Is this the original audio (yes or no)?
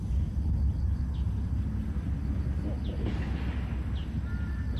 yes